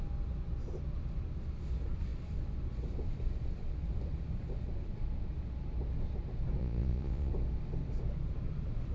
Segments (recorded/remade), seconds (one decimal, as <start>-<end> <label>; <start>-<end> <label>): 0.0-6.6 recorded; 6.6-7.3 remade; 7.3-8.9 recorded

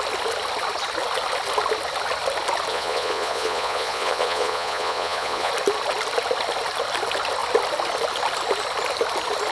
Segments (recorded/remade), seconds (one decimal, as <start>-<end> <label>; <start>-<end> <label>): 0.0-2.7 recorded; 2.7-5.5 remade; 5.5-9.5 recorded

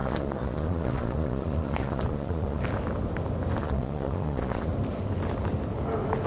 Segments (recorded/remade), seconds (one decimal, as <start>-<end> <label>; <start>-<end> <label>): 0.0-2.6 remade; 2.6-3.6 recorded; 3.6-4.7 remade; 4.7-6.3 recorded

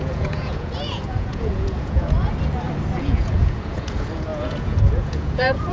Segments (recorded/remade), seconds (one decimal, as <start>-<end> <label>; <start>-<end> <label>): 0.0-2.2 remade; 2.2-3.0 recorded; 3.0-5.7 remade